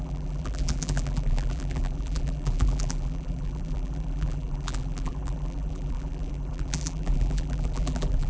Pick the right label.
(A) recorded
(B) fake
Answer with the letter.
B